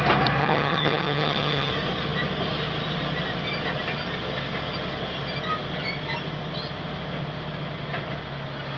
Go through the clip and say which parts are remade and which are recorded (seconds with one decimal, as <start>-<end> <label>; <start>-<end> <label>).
0.0-0.4 recorded; 0.4-1.7 remade; 1.7-8.8 recorded